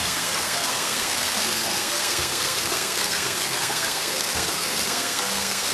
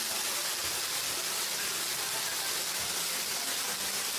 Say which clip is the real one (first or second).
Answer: second